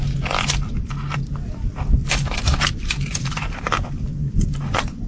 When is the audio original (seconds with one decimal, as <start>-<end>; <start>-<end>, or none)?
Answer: 0.0-2.0

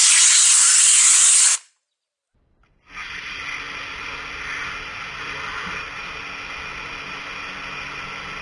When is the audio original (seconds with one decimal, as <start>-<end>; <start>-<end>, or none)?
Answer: 0.0-8.4

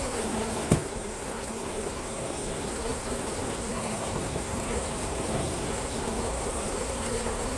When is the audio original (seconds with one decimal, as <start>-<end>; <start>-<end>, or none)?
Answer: none

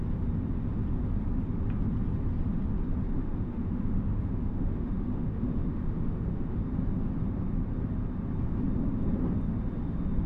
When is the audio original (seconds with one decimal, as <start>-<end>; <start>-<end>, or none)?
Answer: 0.0-3.2; 6.6-10.3

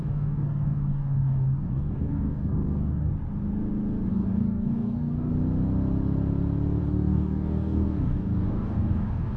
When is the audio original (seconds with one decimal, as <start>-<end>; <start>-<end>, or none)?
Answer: 3.1-4.1; 5.3-6.8

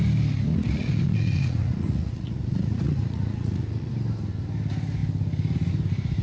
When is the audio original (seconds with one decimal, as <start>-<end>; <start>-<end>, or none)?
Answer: 0.0-0.5; 3.9-6.2

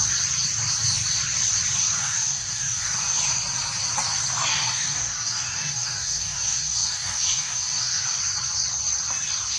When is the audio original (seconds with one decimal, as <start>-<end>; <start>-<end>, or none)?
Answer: 0.0-1.8; 3.2-4.5; 8.2-9.6